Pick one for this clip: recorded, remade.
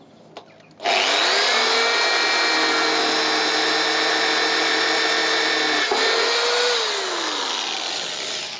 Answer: recorded